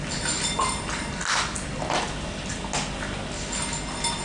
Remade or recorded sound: recorded